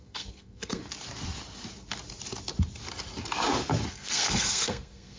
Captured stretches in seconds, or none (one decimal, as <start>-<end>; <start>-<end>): 0.8-3.9